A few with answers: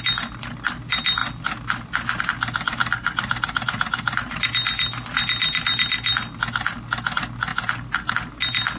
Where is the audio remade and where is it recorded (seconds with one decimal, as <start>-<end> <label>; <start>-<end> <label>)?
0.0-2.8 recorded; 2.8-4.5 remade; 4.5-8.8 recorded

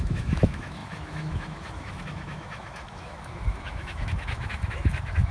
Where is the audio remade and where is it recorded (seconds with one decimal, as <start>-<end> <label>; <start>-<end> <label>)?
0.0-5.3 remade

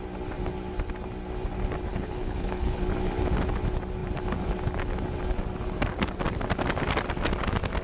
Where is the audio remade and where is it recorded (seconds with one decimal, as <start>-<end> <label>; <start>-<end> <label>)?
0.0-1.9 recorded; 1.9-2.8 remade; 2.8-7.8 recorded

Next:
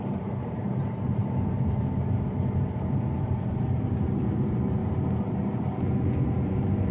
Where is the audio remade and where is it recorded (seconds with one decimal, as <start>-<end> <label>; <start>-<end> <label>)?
0.0-6.9 remade

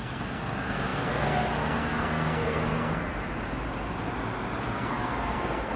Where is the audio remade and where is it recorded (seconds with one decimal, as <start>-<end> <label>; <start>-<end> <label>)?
0.0-3.2 remade; 3.2-4.6 recorded; 4.6-5.8 remade

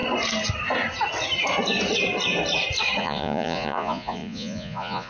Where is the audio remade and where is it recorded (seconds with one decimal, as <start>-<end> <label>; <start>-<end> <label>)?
0.0-3.0 recorded; 3.0-5.1 remade

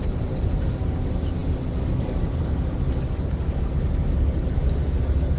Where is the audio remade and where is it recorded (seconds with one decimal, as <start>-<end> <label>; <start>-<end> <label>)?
0.0-5.4 recorded

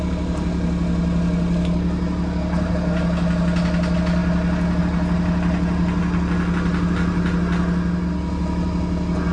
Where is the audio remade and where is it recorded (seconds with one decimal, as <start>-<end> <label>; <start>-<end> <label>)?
0.0-9.3 recorded